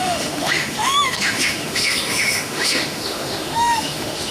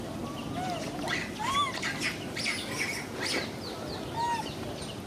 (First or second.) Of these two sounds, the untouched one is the second